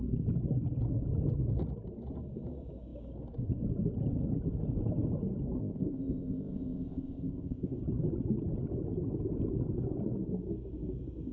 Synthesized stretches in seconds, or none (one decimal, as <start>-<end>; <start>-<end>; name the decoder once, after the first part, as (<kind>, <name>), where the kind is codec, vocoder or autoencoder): 5.6-7.8 (codec, ZipCodec)